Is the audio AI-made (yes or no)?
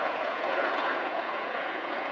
yes